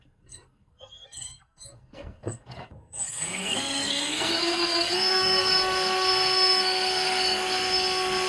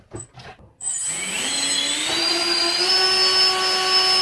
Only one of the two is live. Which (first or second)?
second